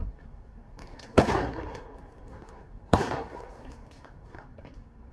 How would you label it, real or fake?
fake